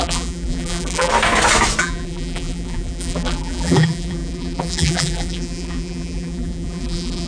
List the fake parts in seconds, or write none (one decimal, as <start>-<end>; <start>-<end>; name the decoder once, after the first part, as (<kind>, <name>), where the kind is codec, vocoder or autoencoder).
0.0-1.1 (vocoder, BigVGAN v2); 1.8-7.3